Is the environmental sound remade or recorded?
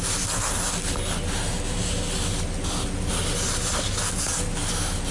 recorded